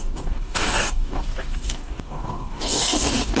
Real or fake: fake